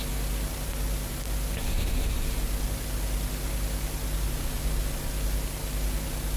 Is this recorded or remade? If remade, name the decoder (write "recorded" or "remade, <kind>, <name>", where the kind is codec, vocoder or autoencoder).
recorded